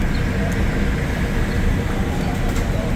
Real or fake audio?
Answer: real